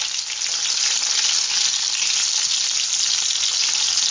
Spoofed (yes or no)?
no